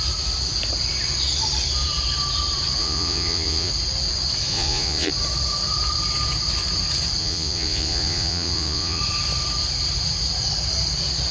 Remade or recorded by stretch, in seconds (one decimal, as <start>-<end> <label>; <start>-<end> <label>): 0.0-2.8 recorded; 2.8-3.7 remade; 3.7-4.5 recorded; 4.5-5.1 remade; 5.1-7.2 recorded; 7.2-9.0 remade; 9.0-11.3 recorded